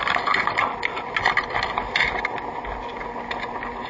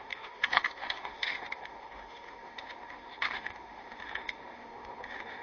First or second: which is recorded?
first